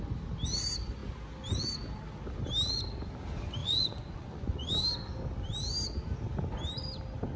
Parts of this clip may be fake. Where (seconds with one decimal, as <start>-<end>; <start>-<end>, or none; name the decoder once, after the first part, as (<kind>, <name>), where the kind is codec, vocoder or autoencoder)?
3.6-4.7 (vocoder, Vocos)